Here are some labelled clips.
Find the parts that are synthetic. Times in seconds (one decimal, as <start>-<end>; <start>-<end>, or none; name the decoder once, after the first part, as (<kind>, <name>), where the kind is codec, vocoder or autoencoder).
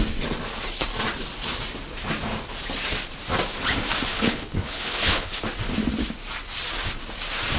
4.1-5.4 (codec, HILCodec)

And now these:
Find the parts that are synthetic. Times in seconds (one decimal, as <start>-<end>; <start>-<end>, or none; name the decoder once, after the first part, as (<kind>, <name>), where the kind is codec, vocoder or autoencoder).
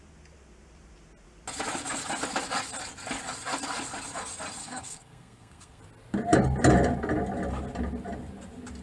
4.6-5.8 (codec, SNAC)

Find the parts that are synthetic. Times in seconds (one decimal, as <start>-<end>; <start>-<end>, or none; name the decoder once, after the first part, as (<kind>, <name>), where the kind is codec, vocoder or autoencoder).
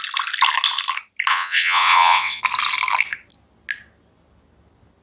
1.3-2.4 (vocoder, WaveNeXt)